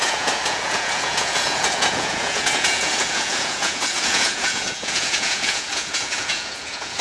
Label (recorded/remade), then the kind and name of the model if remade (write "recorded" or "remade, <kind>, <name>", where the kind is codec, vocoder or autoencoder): remade, vocoder, Vocos